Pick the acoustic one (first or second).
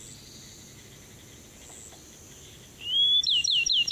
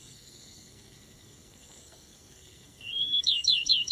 first